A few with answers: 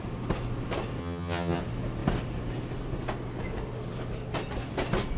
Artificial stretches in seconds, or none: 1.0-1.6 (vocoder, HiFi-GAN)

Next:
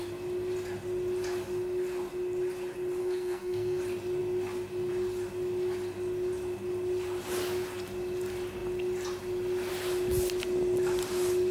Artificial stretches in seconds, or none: 3.0-3.8 (codec, SNAC)

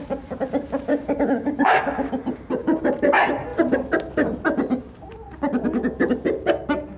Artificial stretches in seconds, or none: 0.9-1.8 (codec, DAC); 2.6-3.1

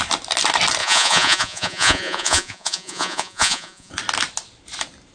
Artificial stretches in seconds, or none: 0.8-3.9 (vocoder, Vocos)

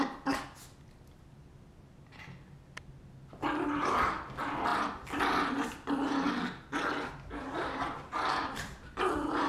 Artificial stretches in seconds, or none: 7.6-9.0 (vocoder, BigVGAN v2)

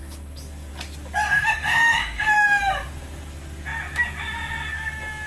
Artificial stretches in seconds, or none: 1.3-2.6 (autoencoder, DAC-VAE)

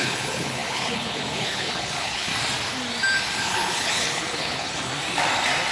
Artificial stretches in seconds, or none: 0.0-2.3 (codec, HILCodec); 3.4-4.9